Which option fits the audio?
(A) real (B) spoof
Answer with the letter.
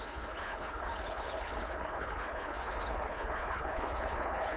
B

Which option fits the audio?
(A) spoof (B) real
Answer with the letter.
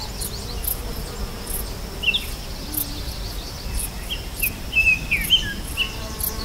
B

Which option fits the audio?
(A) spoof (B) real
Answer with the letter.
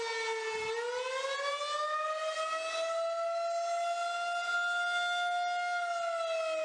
B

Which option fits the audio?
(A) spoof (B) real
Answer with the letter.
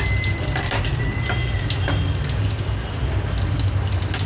B